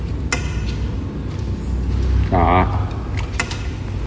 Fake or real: real